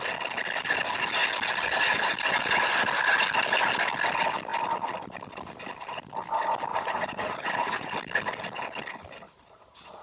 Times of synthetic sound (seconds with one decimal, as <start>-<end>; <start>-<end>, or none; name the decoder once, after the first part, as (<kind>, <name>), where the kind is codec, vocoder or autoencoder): 6.7-7.9 (vocoder, Vocos)